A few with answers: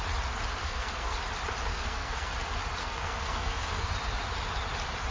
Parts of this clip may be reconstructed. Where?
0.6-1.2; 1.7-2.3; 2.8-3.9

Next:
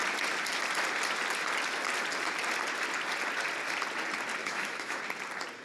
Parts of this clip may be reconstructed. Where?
4.4-5.0

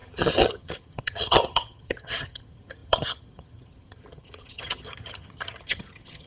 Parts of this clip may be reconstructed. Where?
0.0-6.3